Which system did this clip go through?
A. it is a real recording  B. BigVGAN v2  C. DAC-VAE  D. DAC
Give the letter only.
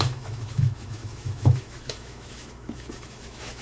C